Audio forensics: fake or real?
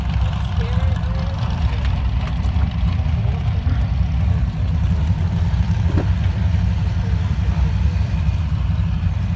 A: fake